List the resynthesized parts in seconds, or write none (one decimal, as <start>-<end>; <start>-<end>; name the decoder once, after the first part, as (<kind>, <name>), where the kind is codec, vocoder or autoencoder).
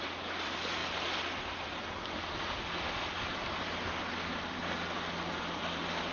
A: none